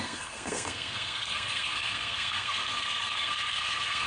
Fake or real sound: fake